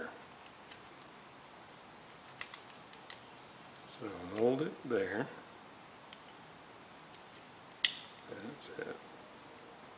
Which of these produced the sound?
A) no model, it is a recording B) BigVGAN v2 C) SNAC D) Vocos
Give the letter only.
A